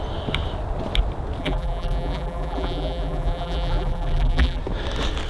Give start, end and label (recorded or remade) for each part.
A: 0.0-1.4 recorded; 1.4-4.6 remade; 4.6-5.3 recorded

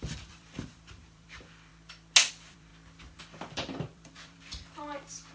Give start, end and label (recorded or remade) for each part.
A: 0.0-1.7 remade; 1.7-2.3 recorded; 2.3-2.7 remade; 2.7-3.2 recorded; 3.2-5.3 remade

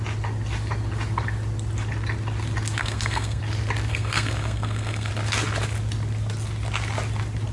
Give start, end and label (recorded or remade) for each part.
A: 0.0-2.8 recorded; 2.8-3.4 remade; 3.4-3.9 recorded; 3.9-5.1 remade; 5.1-7.5 recorded

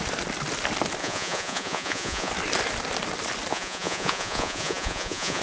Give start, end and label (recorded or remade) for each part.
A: 0.0-1.0 recorded; 1.0-2.3 remade; 2.3-3.5 recorded; 3.5-5.4 remade

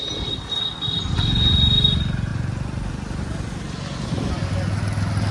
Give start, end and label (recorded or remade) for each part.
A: 0.0-5.3 recorded

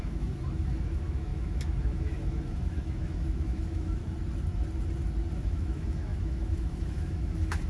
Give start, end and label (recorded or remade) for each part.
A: 0.0-4.0 remade; 4.0-5.4 recorded; 5.4-7.7 remade

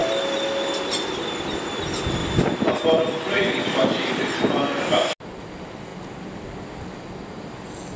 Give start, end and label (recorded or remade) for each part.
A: 0.0-2.2 recorded; 2.2-4.5 remade; 4.5-8.0 recorded

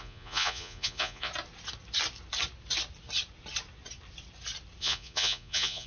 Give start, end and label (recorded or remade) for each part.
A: 0.0-1.3 remade; 1.3-4.8 recorded; 4.8-5.9 remade